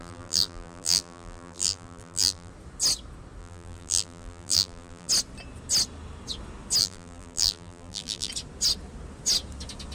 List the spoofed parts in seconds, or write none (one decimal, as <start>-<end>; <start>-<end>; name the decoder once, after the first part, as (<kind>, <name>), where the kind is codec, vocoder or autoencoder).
0.0-2.5 (vocoder, BigVGAN v2); 3.4-5.1; 6.8-8.3